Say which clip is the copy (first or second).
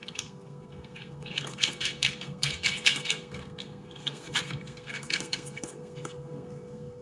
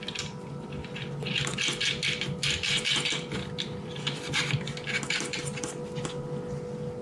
first